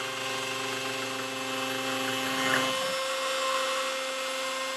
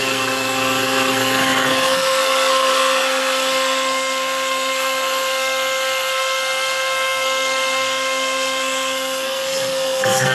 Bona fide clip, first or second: first